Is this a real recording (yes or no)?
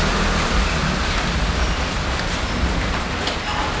yes